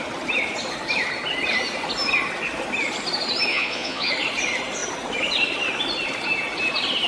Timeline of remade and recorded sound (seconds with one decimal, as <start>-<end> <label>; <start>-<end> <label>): 0.0-3.5 recorded; 3.5-4.1 remade; 4.1-7.1 recorded